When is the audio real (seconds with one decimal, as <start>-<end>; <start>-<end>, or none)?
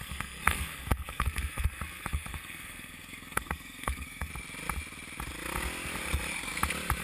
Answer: 4.3-7.0